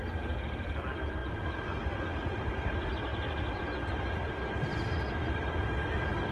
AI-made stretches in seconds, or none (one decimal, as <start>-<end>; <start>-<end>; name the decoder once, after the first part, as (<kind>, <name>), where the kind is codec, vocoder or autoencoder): none